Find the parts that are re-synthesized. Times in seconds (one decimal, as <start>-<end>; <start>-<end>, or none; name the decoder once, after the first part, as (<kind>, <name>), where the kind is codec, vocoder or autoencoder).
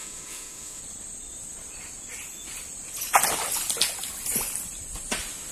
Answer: 0.0-0.8 (autoencoder, DAC-VAE)